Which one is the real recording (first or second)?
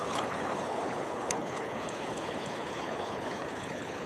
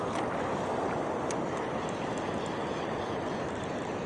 second